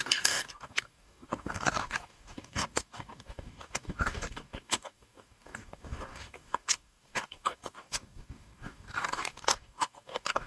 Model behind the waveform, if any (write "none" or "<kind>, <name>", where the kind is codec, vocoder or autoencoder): codec, DAC